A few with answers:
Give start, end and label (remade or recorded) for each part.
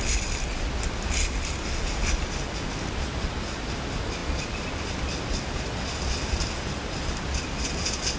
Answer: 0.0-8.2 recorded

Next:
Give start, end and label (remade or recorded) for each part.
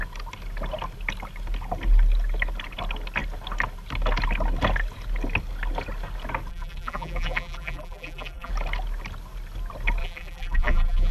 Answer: 0.0-6.5 recorded; 6.5-8.5 remade; 8.5-10.0 recorded; 10.0-11.1 remade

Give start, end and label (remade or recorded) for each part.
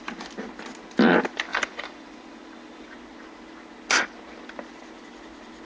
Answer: 0.0-1.5 recorded; 1.5-2.9 remade; 2.9-5.6 recorded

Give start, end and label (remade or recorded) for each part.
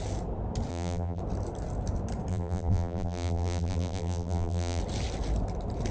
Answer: 0.0-0.7 recorded; 0.7-1.2 remade; 1.2-2.3 recorded; 2.3-4.8 remade; 4.8-5.9 recorded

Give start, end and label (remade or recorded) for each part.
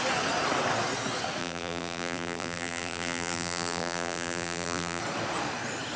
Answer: 0.0-1.4 recorded; 1.4-5.0 remade; 5.0-6.0 recorded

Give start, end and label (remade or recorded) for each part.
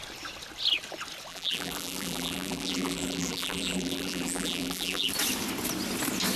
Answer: 0.0-1.3 recorded; 1.3-5.1 remade; 5.1-6.4 recorded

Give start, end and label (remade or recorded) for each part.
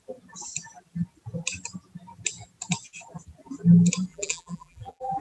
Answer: 0.0-4.1 recorded; 4.1-5.2 remade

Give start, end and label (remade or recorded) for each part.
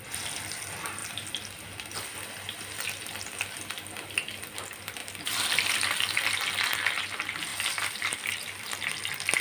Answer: 0.0-5.0 recorded; 5.0-5.7 remade; 5.7-7.5 recorded; 7.5-8.3 remade; 8.3-9.4 recorded